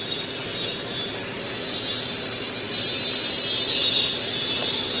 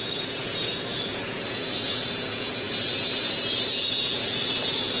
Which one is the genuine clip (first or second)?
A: first